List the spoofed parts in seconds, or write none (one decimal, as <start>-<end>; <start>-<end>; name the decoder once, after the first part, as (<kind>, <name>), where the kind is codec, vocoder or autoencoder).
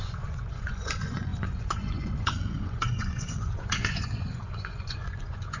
0.0-5.6 (vocoder, Vocos)